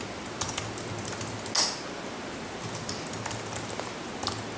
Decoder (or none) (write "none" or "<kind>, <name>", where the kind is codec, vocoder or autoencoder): none